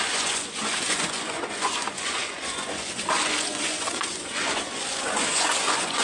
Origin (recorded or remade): remade